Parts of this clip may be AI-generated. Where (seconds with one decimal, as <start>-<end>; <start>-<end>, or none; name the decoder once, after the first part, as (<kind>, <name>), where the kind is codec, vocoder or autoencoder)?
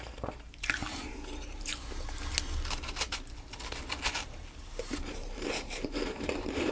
0.0-1.7 (vocoder, BigVGAN v2); 4.1-6.7